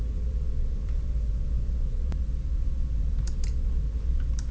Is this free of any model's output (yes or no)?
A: no